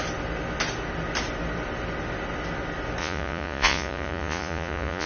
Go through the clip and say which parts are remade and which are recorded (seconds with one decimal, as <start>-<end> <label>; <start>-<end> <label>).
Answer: 0.0-3.0 recorded; 3.0-5.1 remade